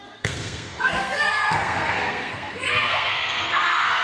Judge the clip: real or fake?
fake